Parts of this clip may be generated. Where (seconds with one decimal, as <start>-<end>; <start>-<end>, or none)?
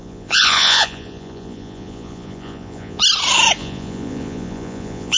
0.0-3.0; 3.6-5.2